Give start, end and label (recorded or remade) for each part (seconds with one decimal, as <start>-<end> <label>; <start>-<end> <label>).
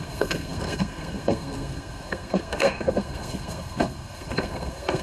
0.0-5.0 remade